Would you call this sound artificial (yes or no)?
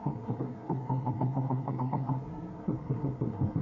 yes